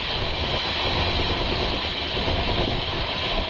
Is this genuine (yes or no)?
yes